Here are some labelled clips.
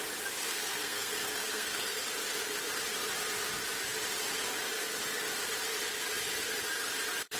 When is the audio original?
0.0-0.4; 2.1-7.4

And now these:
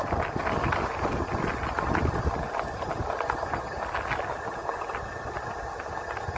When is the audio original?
0.0-6.4

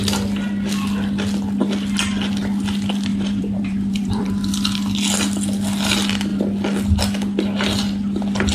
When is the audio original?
0.0-3.1; 4.5-8.5

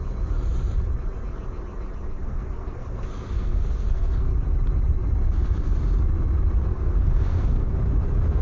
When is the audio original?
0.0-2.2; 4.3-6.7; 7.7-8.4

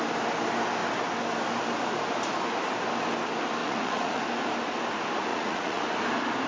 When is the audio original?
0.0-3.6; 4.2-5.3; 5.8-6.5

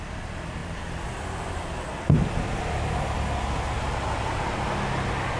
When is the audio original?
0.0-5.4

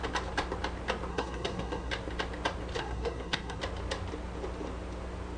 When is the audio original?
0.0-1.1; 1.9-2.8; 3.6-5.4

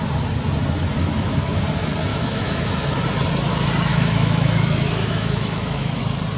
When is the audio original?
0.0-1.0; 1.6-2.1; 2.7-3.9; 6.0-6.4